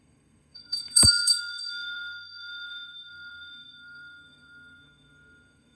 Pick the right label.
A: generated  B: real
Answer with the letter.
A